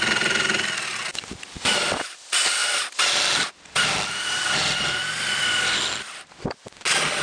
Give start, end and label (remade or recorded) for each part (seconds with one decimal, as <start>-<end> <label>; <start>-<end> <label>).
0.0-7.2 recorded

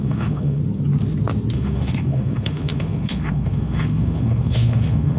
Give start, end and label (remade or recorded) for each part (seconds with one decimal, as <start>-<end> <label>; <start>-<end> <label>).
0.0-0.6 remade; 0.6-1.5 recorded; 1.5-5.2 remade

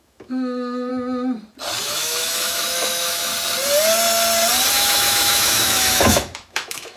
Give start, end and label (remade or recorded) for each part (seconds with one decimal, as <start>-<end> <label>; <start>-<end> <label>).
0.0-0.9 remade; 0.9-1.8 recorded; 1.8-3.3 remade; 3.3-4.7 recorded; 4.7-7.0 remade

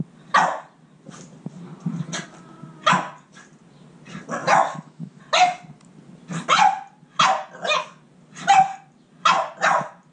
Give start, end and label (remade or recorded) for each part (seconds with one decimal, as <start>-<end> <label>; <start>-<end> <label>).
0.0-4.4 recorded; 4.4-5.2 remade; 5.2-10.1 recorded

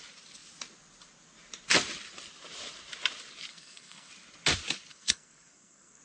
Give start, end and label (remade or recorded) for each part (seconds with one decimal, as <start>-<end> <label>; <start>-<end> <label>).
0.0-3.5 recorded; 3.5-4.1 remade; 4.1-4.9 recorded; 4.9-6.0 remade

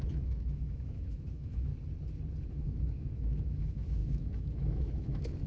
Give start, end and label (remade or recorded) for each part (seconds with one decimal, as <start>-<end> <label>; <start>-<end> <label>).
0.0-1.7 remade; 1.7-2.5 recorded; 2.5-5.5 remade